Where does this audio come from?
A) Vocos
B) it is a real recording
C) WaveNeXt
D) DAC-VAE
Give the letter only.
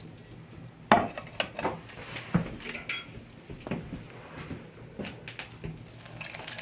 B